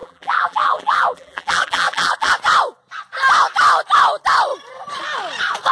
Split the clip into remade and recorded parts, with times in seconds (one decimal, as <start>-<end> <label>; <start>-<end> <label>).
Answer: 0.0-2.3 remade; 2.3-5.7 recorded